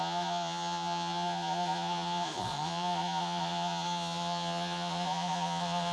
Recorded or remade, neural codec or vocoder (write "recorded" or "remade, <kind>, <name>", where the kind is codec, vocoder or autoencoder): remade, vocoder, Vocos